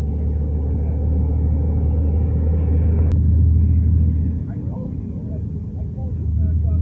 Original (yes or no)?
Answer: yes